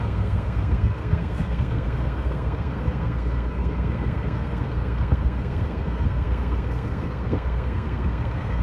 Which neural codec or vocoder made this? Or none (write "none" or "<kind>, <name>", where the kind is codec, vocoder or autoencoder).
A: codec, SNAC